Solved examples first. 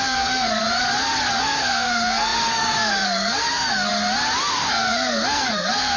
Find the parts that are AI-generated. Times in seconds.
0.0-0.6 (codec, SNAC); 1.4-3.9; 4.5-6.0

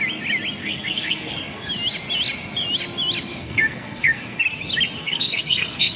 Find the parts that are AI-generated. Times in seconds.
0.6-1.7 (codec, SNAC); 3.3-4.4; 5.0-6.0

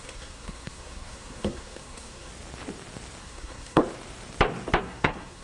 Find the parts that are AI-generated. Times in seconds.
0.0-2.3 (codec, SNAC); 3.2-3.8; 4.8-5.4

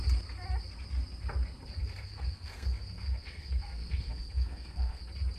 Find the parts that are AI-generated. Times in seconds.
1.8-5.0 (codec, SNAC)

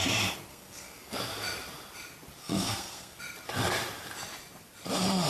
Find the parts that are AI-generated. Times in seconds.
0.5-1.2 (codec, SNAC); 2.4-3.2